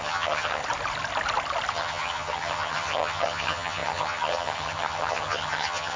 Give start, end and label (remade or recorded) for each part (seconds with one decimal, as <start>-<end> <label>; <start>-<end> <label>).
0.0-0.6 remade; 0.6-1.7 recorded; 1.7-6.0 remade